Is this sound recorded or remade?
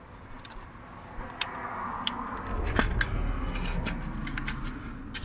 recorded